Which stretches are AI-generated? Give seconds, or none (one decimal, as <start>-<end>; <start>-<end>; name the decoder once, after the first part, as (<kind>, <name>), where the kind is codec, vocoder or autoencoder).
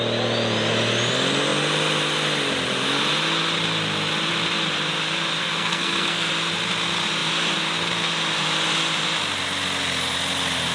5.4-6.3 (codec, SNAC)